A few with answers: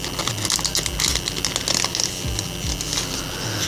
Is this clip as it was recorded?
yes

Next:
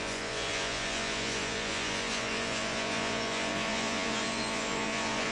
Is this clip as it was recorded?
no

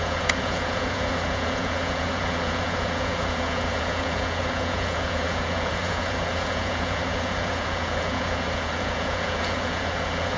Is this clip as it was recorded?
no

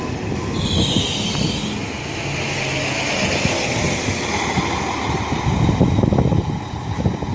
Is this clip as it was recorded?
yes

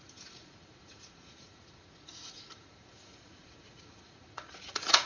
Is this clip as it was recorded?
no